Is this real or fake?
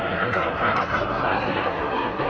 fake